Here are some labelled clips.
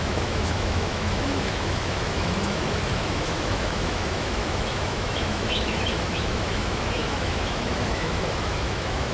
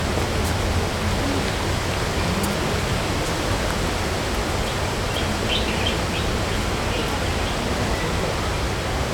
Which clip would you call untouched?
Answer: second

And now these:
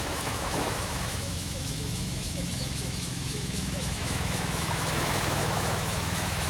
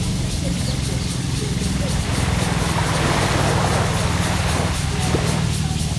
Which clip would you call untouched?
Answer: second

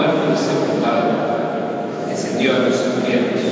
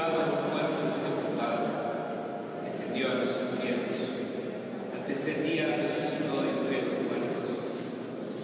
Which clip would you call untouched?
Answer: second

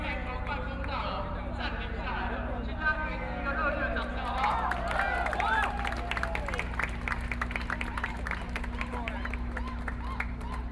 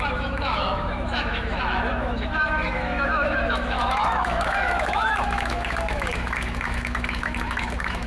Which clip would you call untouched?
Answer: first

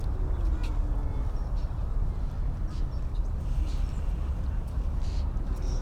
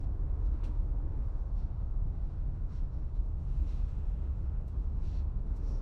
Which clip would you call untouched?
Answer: first